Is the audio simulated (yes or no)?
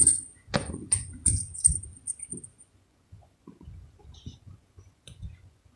yes